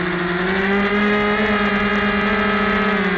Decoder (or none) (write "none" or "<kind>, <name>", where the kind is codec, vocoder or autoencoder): none